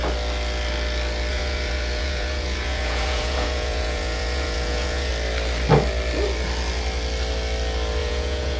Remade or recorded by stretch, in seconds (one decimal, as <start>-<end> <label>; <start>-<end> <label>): 0.0-1.3 recorded; 1.3-5.1 remade; 5.1-8.0 recorded; 8.0-8.6 remade